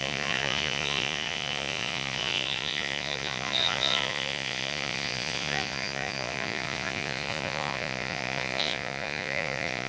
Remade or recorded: remade